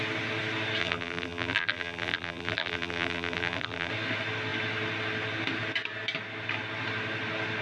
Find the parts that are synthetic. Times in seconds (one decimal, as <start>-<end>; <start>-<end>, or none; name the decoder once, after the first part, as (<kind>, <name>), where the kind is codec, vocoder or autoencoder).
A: 0.8-3.9 (vocoder, BigVGAN v2)